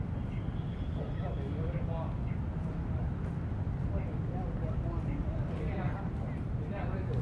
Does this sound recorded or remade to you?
recorded